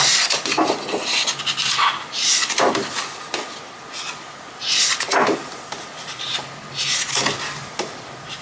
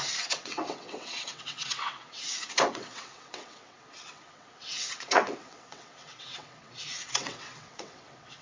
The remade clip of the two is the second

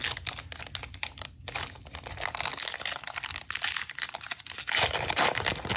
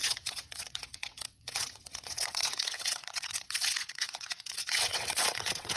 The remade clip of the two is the second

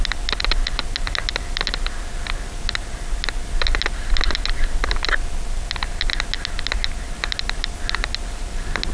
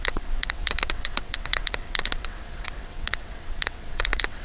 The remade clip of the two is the second